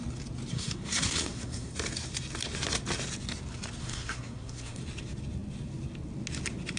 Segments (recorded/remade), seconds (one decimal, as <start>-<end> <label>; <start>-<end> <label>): 0.0-0.5 recorded; 0.5-1.7 remade; 1.7-3.8 recorded; 3.8-4.8 remade; 4.8-6.8 recorded